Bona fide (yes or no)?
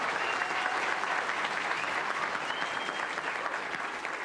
yes